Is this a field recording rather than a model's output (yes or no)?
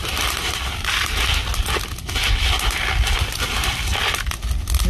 yes